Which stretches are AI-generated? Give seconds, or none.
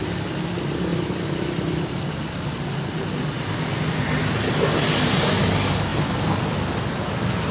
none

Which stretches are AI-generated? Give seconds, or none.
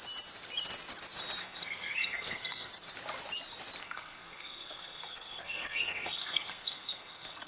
1.4-2.7 (codec, SNAC); 3.8-7.5